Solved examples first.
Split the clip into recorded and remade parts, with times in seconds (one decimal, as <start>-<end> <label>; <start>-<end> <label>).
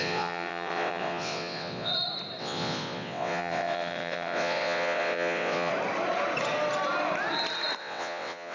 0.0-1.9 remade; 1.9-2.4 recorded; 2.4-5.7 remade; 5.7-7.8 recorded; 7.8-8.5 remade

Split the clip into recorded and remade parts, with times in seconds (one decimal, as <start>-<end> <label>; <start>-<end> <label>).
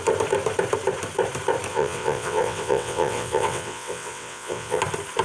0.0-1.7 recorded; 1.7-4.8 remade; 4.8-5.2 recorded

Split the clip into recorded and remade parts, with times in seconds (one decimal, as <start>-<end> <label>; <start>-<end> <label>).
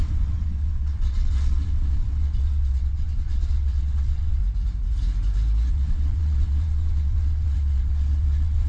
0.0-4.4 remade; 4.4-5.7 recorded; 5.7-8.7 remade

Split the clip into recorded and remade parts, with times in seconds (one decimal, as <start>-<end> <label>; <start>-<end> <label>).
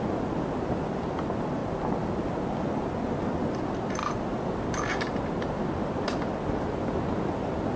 0.0-7.8 recorded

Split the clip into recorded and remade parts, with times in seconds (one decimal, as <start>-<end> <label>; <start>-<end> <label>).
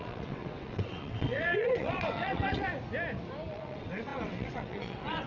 0.0-2.7 remade; 2.7-3.5 recorded; 3.5-5.3 remade